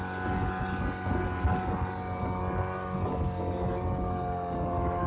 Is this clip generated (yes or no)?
no